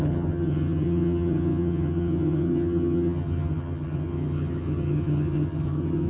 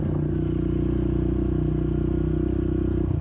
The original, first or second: second